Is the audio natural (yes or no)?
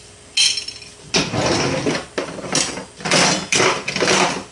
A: yes